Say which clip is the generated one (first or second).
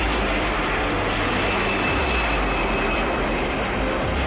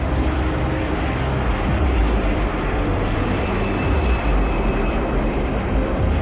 second